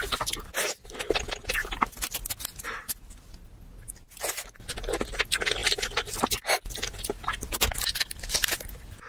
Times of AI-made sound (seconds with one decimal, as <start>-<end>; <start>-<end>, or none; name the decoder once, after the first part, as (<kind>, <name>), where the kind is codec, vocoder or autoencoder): none